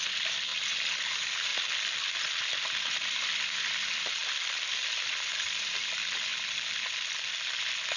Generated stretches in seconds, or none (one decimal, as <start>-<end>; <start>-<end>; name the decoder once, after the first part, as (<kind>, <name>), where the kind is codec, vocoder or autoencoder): 0.0-0.5 (vocoder, BigVGAN v2); 1.0-1.5; 2.1-6.3; 7.3-8.0